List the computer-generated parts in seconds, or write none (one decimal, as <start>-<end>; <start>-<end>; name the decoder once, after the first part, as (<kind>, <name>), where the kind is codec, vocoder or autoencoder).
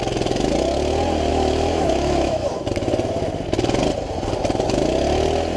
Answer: 1.3-2.7 (autoencoder, DAC-VAE)